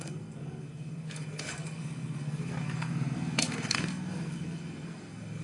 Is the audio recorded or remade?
remade